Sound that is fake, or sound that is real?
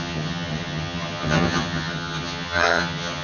fake